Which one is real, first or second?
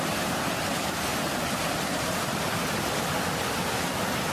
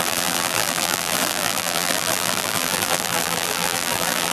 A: first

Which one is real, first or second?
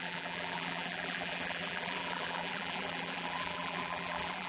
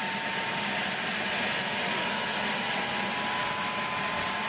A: second